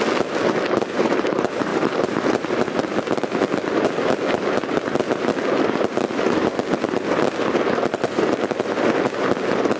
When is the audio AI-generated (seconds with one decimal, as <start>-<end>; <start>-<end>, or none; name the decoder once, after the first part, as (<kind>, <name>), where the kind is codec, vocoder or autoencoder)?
1.7-2.2 (vocoder, BigVGAN v2); 2.9-3.9